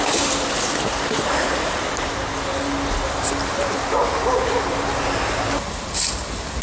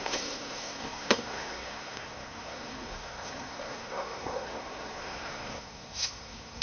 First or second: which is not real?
second